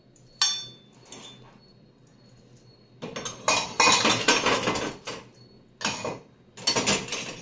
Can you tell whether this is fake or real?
real